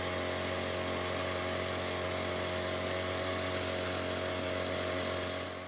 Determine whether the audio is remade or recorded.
recorded